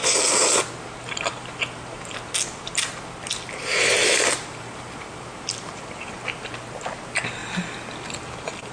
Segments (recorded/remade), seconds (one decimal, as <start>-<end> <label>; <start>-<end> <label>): 0.0-3.7 recorded; 3.7-6.1 remade; 6.1-8.7 recorded